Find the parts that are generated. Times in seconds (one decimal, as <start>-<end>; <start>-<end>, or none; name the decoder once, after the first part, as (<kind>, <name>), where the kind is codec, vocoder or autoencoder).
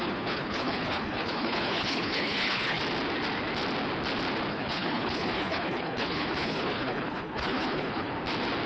0.0-2.8 (codec, HILCodec); 4.5-8.1